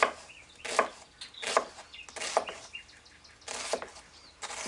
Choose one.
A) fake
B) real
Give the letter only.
B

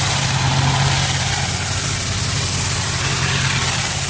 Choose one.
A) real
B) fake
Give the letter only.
A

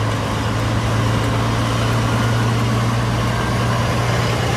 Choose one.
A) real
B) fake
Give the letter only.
A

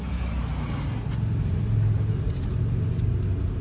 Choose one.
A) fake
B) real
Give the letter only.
B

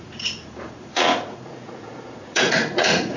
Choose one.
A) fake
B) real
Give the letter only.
A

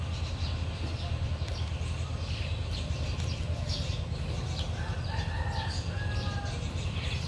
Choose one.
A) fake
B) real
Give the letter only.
B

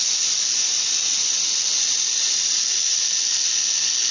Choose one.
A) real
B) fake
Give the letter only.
A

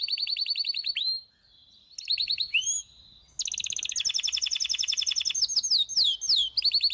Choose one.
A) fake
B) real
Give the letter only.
B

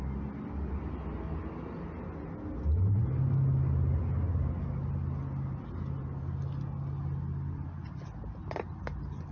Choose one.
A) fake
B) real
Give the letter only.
B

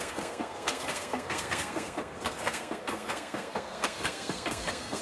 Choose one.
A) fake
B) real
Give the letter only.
A